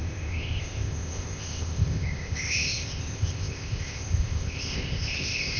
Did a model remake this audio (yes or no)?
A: yes